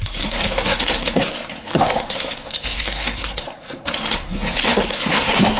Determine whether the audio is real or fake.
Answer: fake